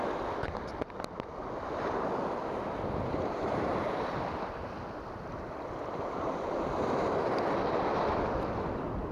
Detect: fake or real real